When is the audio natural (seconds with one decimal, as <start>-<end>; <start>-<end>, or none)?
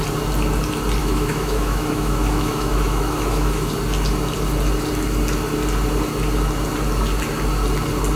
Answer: 0.0-1.0; 3.7-8.2